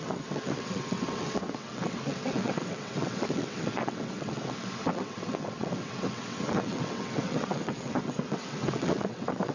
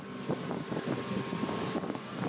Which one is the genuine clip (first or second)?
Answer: second